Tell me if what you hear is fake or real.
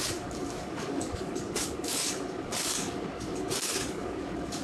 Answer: fake